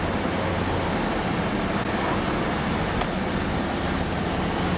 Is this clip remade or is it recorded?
recorded